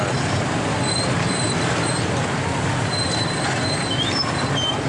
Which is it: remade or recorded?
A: recorded